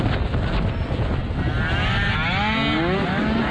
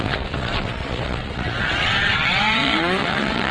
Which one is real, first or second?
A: first